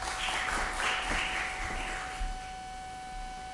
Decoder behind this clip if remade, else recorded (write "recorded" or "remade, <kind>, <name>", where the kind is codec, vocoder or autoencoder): recorded